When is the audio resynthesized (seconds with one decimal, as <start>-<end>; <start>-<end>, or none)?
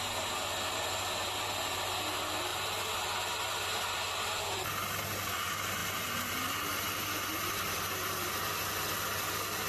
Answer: none